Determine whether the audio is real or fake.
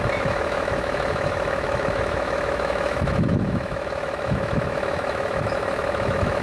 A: fake